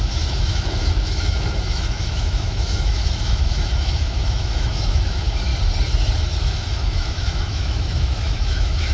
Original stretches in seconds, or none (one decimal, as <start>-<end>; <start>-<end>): 5.5-6.4